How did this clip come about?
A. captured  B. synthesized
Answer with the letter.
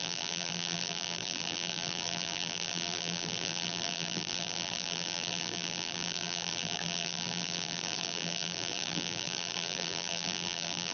B